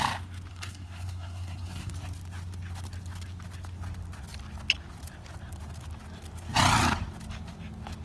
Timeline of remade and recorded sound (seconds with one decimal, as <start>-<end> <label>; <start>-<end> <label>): 0.0-0.5 recorded; 0.5-1.9 remade; 1.9-8.0 recorded